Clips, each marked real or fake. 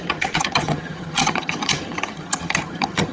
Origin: fake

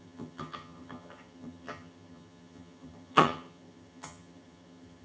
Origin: fake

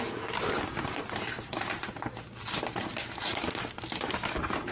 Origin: real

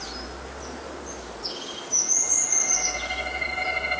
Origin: real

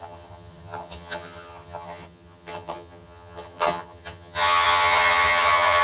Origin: fake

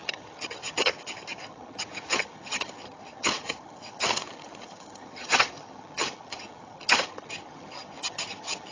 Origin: fake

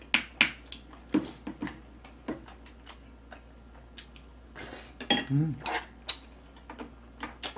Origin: real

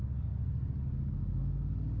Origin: real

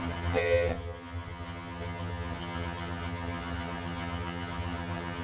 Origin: fake